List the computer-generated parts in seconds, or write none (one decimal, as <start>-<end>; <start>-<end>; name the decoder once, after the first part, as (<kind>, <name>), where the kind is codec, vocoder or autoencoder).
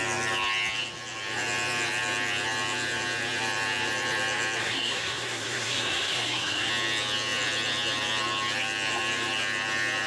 4.6-6.7 (codec, SNAC)